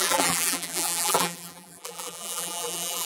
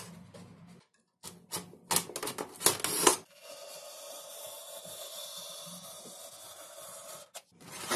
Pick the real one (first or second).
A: second